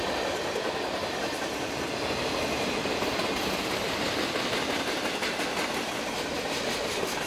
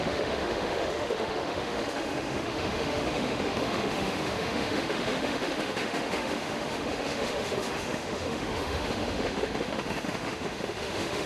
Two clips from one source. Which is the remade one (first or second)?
second